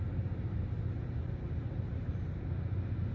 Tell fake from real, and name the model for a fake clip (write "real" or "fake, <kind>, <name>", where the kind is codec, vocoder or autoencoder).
real